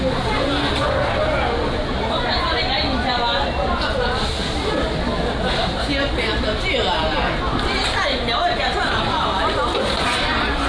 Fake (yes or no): no